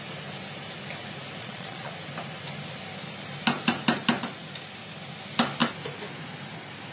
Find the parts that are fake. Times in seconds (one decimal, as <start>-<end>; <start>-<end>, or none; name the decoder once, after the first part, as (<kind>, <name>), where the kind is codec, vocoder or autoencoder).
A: 1.4-1.9 (vocoder, Vocos)